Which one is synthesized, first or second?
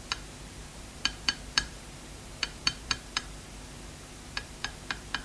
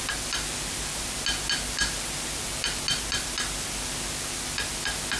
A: first